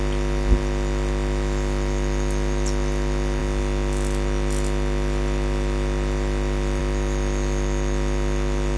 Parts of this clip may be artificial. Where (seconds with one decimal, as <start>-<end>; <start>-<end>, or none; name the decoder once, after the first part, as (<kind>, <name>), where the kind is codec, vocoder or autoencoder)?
none